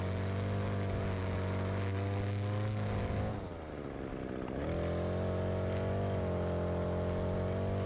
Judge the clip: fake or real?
real